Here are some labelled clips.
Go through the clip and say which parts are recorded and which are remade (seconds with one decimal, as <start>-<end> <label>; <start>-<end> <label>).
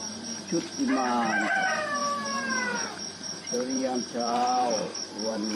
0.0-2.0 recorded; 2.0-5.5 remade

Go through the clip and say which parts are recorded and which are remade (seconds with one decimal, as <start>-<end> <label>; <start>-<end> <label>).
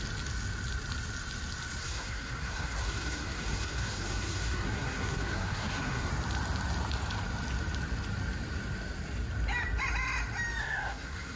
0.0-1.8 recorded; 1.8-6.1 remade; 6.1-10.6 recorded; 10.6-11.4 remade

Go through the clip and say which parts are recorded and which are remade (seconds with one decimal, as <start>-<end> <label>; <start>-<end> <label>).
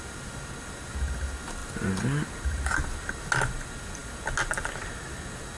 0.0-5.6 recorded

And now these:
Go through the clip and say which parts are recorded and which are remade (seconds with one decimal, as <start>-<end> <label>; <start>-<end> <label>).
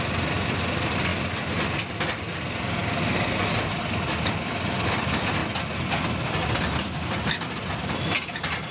0.0-8.7 recorded